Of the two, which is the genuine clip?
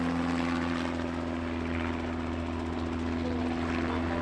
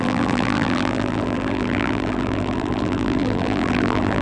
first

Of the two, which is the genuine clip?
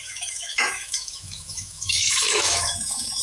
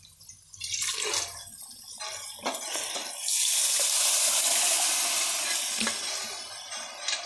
second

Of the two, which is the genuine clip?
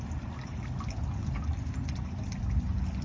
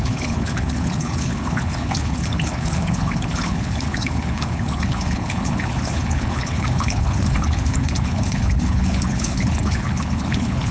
first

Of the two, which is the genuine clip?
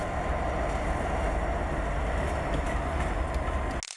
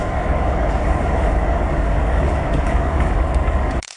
first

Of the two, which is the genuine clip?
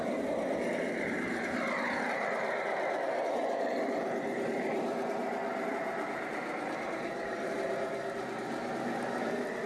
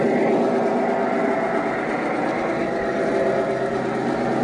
second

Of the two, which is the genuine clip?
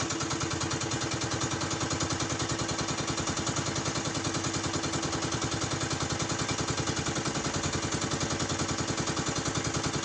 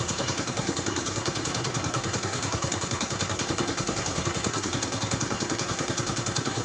first